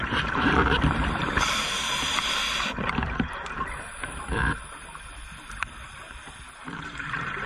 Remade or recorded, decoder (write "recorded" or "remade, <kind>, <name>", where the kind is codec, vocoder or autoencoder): remade, vocoder, BigVGAN v2